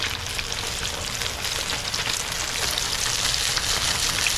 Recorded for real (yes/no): yes